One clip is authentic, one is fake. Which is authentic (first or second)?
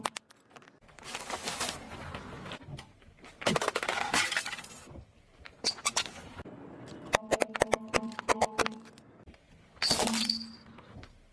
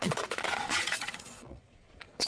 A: first